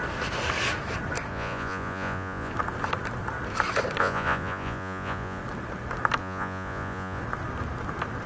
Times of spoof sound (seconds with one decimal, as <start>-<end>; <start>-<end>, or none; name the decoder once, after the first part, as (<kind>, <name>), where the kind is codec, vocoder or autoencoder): 1.3-2.5 (vocoder, Vocos); 4.0-5.4; 6.2-7.2